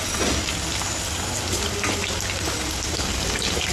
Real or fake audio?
real